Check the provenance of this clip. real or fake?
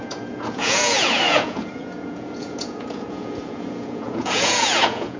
fake